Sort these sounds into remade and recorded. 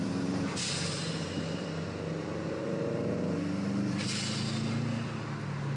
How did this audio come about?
recorded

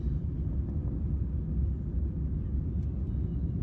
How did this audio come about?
recorded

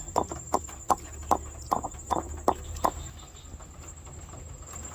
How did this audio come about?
recorded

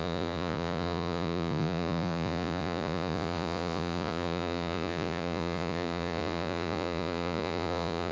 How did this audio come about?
remade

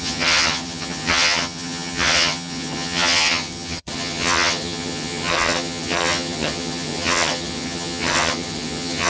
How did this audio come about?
remade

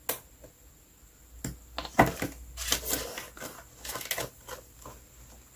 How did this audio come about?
recorded